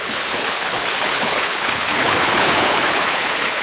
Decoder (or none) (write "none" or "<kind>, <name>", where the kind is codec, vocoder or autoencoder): codec, HILCodec